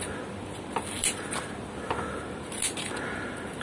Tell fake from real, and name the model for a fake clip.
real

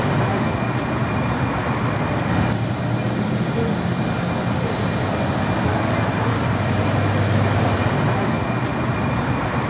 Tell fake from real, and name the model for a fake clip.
real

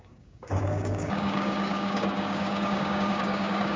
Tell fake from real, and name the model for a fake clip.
fake, codec, DAC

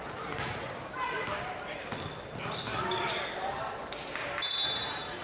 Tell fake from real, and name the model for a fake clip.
real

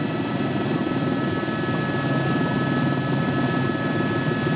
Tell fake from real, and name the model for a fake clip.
real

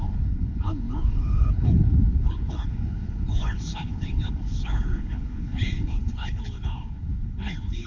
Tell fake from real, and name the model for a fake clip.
fake, codec, HILCodec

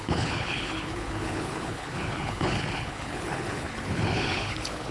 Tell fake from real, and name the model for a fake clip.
fake, codec, HILCodec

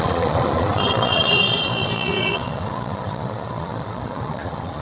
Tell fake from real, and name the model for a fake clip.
fake, vocoder, Vocos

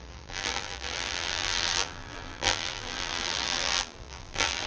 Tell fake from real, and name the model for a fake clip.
fake, vocoder, BigVGAN v2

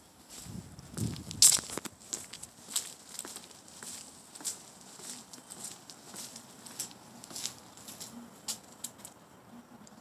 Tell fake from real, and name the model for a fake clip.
real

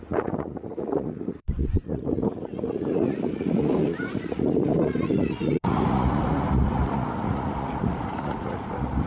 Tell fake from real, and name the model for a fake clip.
fake, vocoder, Vocos